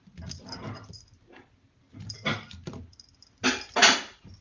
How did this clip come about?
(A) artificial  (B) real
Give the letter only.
B